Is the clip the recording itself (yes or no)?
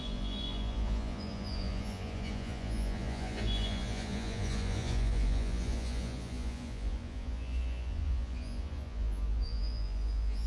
no